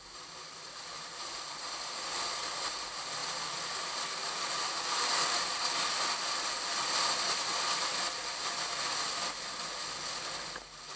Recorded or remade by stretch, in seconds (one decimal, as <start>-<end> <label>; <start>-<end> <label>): 0.0-11.0 recorded